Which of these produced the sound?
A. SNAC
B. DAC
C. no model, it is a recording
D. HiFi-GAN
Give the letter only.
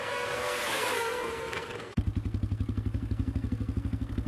A